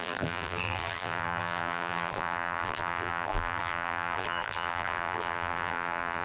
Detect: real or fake fake